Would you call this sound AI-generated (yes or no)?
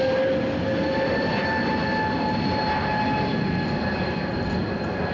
no